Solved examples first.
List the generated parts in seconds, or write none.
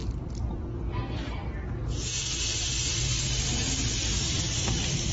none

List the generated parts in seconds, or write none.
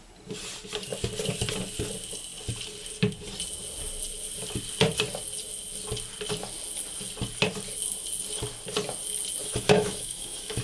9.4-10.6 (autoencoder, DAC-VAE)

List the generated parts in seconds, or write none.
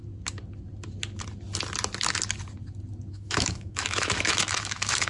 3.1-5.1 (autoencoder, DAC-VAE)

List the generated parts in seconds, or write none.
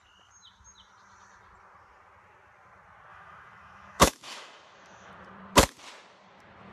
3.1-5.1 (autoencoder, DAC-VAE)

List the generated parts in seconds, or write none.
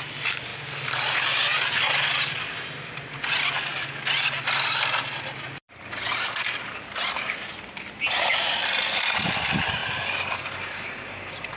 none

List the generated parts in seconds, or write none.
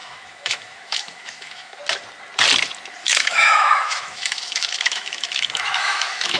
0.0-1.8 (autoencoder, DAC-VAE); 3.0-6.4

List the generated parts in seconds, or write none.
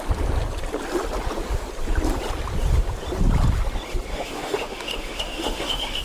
4.1-6.0 (autoencoder, DAC-VAE)